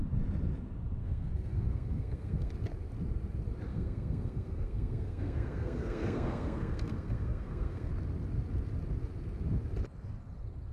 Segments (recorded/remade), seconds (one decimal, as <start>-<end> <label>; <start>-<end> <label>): 0.0-1.0 recorded; 1.0-2.5 remade; 2.5-3.7 recorded; 3.7-7.9 remade; 7.9-10.7 recorded